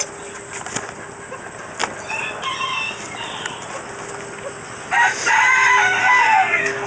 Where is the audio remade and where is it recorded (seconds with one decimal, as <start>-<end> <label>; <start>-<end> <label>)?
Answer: 0.0-6.0 recorded; 6.0-6.9 remade